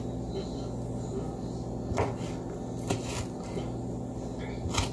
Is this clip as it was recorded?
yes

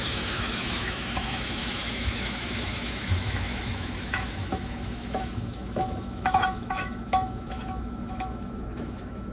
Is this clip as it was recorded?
no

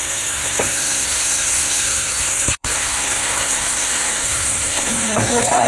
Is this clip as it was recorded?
no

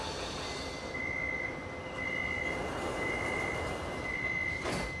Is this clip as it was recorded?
no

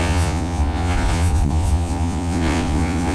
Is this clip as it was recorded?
no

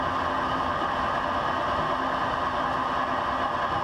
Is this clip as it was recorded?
yes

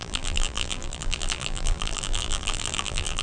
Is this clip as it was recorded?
no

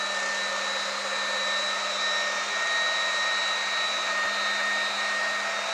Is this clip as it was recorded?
yes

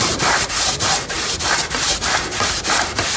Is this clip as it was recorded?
no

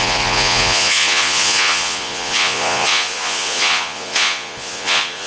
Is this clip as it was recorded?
no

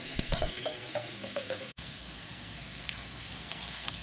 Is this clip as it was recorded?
no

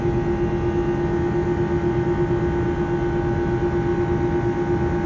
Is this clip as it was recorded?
yes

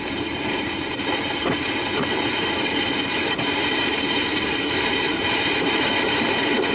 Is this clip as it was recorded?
no